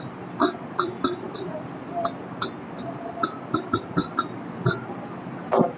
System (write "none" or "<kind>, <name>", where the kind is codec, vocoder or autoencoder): none